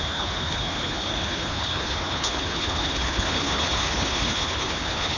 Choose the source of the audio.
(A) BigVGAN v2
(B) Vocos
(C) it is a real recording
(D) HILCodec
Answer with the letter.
D